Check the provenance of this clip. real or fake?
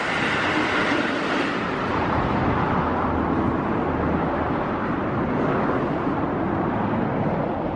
real